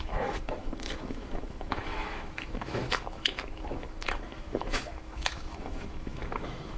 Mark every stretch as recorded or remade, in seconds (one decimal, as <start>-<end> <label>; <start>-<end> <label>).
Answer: 0.0-6.8 remade